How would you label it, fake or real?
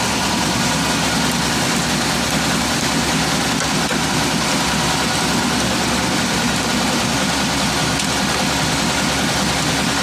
real